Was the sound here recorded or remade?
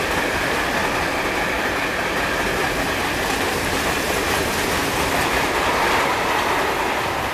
recorded